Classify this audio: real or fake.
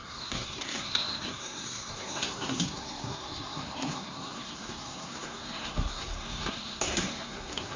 fake